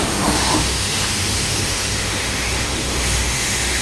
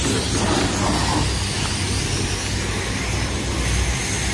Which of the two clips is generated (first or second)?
first